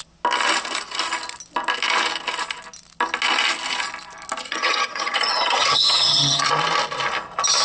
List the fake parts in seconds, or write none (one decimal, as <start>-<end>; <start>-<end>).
4.5-6.5